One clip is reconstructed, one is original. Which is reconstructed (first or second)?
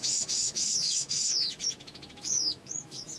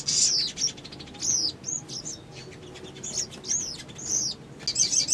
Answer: first